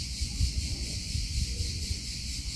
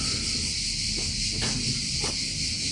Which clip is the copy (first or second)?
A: first